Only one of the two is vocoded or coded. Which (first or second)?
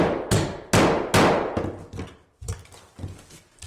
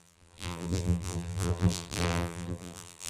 second